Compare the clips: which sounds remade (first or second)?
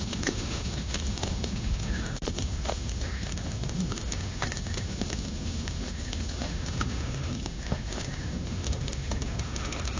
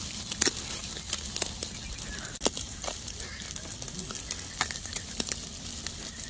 first